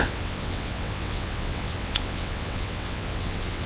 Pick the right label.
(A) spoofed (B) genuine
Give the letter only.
A